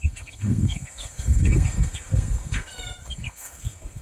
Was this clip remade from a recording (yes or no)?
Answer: yes